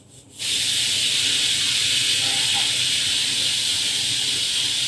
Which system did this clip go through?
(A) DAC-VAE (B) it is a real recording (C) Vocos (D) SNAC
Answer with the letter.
B